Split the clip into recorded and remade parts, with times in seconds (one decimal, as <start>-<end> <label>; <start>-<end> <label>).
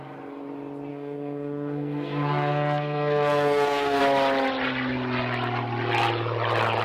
0.0-0.9 recorded; 0.9-4.0 remade; 4.0-6.8 recorded